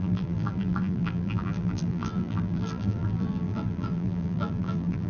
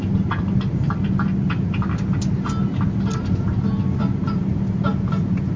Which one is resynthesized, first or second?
first